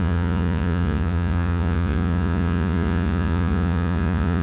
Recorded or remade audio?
remade